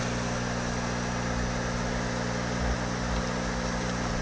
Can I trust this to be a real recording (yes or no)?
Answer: yes